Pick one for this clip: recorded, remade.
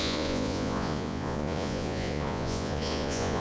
remade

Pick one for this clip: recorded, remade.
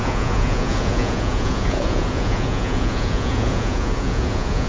remade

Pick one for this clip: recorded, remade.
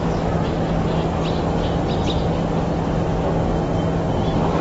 recorded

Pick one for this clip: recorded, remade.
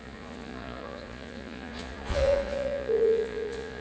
remade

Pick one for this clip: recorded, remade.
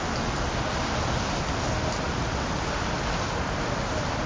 recorded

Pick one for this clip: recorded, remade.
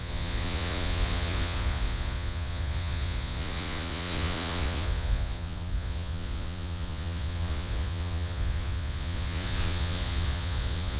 remade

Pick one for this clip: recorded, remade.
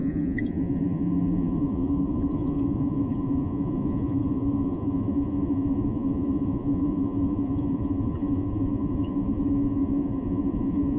remade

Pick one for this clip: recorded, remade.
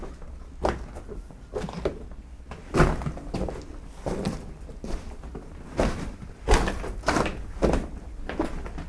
recorded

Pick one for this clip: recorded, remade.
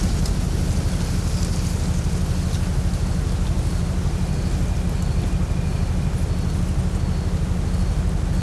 recorded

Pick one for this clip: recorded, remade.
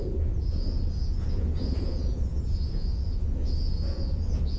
remade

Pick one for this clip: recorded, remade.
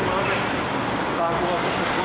recorded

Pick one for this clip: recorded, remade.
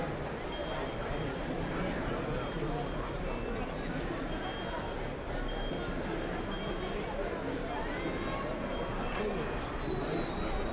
recorded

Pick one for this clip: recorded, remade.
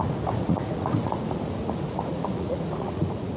remade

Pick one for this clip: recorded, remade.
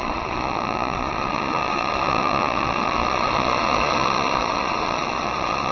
remade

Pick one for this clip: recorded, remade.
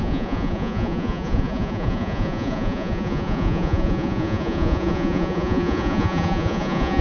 remade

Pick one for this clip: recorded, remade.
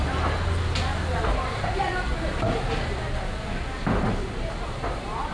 recorded